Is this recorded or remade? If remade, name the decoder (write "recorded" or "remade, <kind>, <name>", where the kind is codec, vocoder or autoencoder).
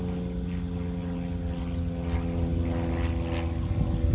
recorded